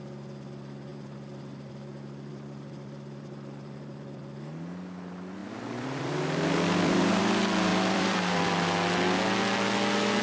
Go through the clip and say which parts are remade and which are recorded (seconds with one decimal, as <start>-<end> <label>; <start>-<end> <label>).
0.0-0.9 recorded; 0.9-1.7 remade; 1.7-2.3 recorded; 2.3-4.2 remade; 4.2-5.4 recorded; 5.4-7.2 remade; 7.2-7.7 recorded; 7.7-8.5 remade; 8.5-10.2 recorded